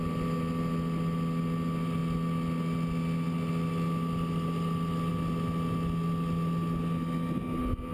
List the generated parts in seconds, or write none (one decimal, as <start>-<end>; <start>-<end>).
none